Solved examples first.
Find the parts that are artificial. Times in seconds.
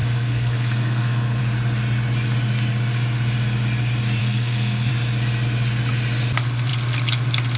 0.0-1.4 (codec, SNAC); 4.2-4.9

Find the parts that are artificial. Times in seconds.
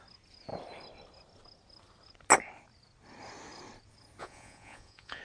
4.2-5.2 (vocoder, Vocos)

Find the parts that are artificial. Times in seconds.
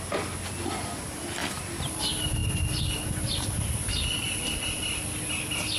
1.4-2.0 (vocoder, BigVGAN v2)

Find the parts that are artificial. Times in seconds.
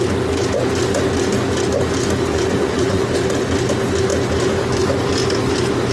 2.3-3.1 (vocoder, Vocos)